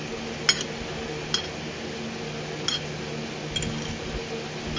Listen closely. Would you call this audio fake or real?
real